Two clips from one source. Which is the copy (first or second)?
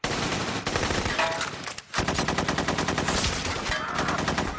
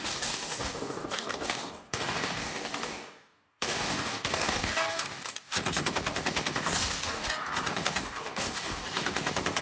second